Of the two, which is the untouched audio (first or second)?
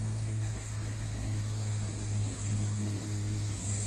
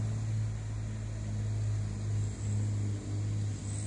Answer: second